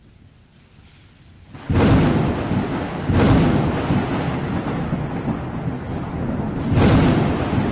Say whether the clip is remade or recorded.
recorded